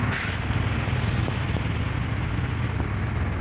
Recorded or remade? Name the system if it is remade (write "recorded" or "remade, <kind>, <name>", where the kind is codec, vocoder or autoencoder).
recorded